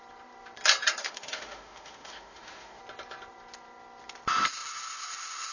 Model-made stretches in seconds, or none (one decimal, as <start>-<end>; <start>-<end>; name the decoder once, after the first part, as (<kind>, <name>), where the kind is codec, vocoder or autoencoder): 1.0-2.8 (autoencoder, DAC-VAE)